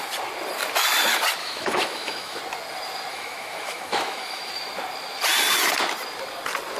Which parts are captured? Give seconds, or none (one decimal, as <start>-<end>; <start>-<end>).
0.0-1.4; 2.4-3.1; 4.5-6.8